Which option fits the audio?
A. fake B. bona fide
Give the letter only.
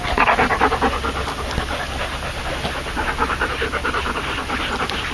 B